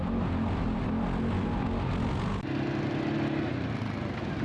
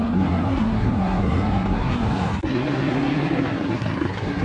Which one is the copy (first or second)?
second